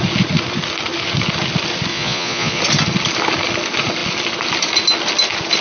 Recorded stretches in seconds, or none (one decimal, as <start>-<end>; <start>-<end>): 0.0-1.9; 2.6-5.6